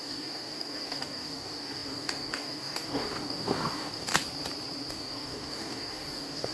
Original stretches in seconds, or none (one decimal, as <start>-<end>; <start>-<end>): 4.1-4.9